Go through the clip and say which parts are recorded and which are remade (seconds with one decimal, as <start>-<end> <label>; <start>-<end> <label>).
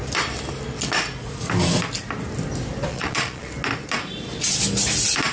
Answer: 0.0-2.9 recorded; 2.9-3.5 remade; 3.5-5.3 recorded